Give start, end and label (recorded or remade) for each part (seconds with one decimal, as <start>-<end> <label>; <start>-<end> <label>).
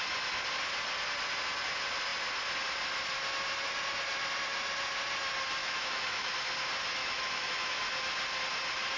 0.0-5.6 recorded; 5.6-6.3 remade; 6.3-7.0 recorded; 7.0-7.8 remade; 7.8-9.0 recorded